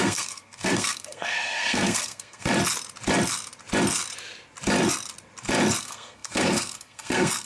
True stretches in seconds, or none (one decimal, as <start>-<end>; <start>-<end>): 2.5-5.8